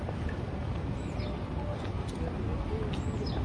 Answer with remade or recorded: recorded